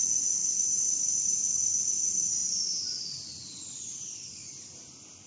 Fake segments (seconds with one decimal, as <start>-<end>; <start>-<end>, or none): 0.4-1.2